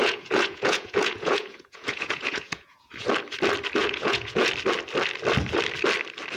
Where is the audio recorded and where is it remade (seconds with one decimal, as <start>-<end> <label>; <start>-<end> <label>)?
0.0-3.1 remade; 3.1-3.8 recorded; 3.8-4.5 remade; 4.5-6.4 recorded